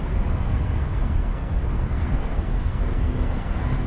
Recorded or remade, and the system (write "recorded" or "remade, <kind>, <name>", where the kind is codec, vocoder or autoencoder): remade, codec, SNAC